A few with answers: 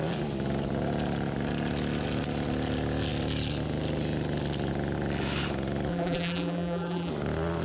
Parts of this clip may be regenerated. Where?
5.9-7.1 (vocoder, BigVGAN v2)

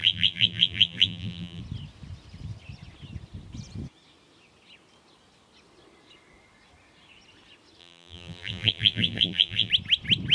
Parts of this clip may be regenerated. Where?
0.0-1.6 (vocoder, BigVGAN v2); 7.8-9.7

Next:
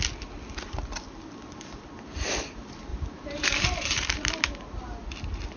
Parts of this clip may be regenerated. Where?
2.9-4.3 (vocoder, BigVGAN v2)

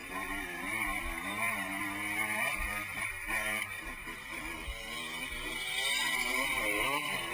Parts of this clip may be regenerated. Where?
0.0-4.4 (vocoder, BigVGAN v2)

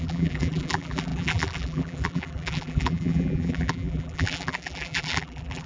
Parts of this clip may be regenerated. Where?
0.0-5.7 (vocoder, BigVGAN v2)